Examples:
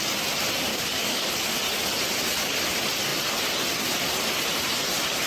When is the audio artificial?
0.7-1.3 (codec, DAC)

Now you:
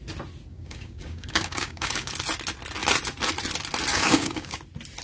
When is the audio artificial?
0.5-2.1 (codec, DAC); 3.9-4.6